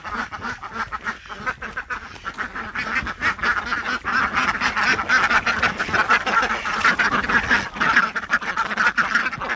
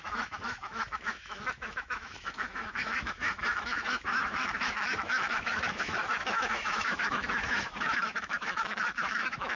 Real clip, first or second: first